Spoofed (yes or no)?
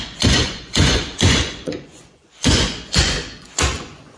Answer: yes